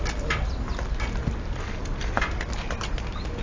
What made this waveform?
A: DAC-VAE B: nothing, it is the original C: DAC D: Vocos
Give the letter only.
B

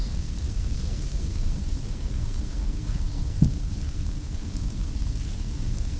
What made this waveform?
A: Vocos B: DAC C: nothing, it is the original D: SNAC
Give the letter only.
D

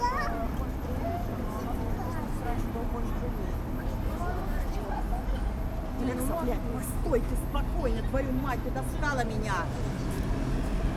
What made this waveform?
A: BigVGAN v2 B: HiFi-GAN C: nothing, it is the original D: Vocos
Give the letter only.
C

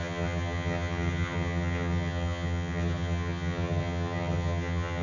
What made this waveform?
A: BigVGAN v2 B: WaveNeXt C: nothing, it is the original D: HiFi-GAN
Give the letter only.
D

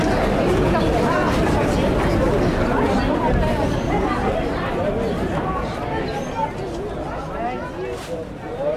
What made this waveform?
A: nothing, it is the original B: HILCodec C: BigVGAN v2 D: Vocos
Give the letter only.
A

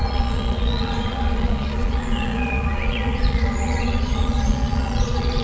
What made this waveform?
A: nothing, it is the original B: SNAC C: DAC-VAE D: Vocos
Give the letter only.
D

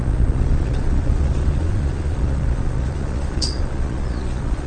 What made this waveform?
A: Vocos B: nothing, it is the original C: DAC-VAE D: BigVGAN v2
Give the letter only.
A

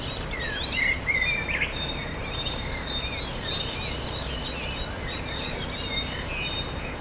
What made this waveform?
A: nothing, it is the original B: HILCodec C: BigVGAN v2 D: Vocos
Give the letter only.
A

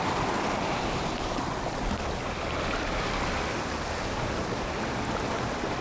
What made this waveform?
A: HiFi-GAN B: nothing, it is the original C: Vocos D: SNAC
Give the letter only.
B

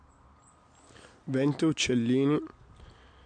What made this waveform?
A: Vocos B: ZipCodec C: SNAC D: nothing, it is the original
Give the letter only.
D